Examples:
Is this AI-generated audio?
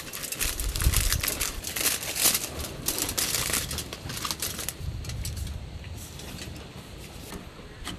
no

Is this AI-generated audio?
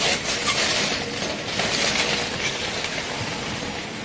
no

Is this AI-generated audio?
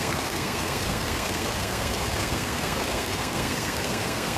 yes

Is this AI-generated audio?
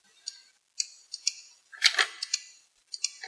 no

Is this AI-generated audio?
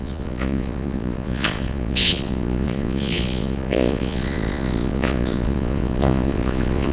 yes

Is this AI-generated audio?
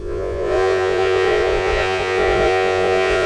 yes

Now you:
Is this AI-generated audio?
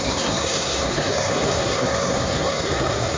yes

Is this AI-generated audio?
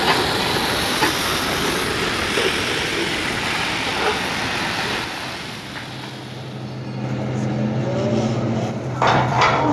no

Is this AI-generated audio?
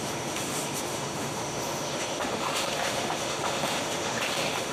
yes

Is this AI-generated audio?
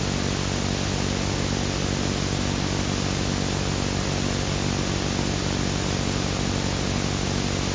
no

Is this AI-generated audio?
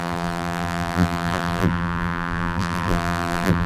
yes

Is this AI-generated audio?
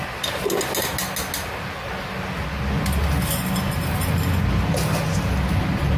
no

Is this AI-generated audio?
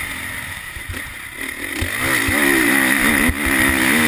no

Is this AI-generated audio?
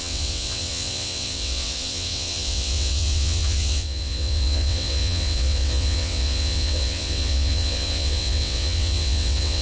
yes